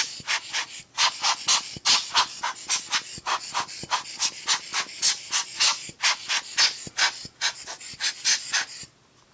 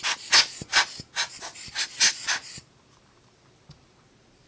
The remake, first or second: second